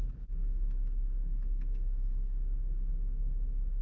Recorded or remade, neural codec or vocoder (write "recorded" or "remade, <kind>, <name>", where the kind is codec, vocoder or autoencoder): remade, codec, DAC